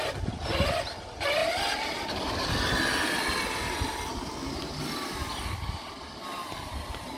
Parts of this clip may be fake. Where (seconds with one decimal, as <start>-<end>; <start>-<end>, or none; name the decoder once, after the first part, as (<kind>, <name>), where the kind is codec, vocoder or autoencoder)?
none

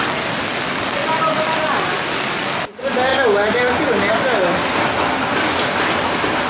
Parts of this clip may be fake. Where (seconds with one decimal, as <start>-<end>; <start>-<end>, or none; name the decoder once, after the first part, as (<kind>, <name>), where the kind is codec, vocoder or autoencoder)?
none